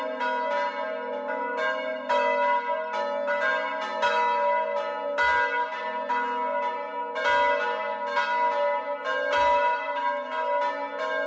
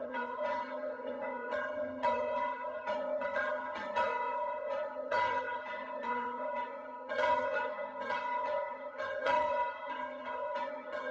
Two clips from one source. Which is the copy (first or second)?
second